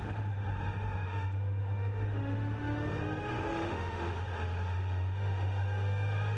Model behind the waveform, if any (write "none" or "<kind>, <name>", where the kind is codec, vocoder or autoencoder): autoencoder, DAC-VAE